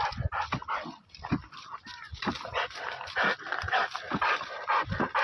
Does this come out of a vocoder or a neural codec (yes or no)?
no